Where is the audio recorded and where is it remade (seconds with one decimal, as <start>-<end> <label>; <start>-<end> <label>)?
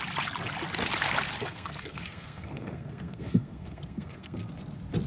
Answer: 0.0-1.4 recorded; 1.4-4.5 remade; 4.5-5.1 recorded